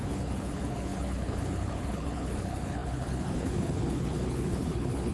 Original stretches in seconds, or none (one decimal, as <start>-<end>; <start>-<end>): none